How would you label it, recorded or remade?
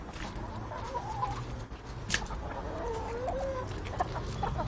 recorded